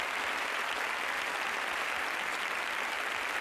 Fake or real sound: real